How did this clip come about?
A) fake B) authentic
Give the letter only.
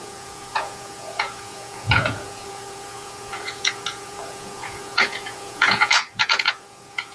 A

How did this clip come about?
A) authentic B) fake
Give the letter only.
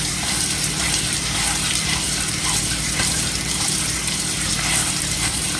B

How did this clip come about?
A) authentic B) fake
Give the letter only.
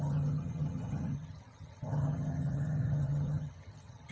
B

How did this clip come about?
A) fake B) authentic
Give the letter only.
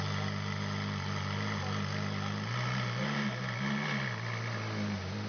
B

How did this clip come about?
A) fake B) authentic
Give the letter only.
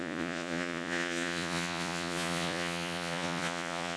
A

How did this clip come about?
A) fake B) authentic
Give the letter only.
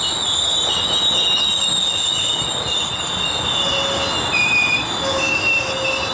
B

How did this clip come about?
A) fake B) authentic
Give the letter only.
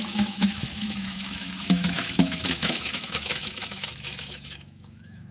A